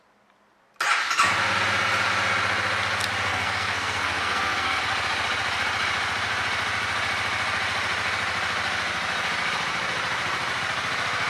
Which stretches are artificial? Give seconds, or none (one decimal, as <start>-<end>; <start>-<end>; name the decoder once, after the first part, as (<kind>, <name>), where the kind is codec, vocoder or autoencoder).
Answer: 3.3-4.8 (codec, SNAC)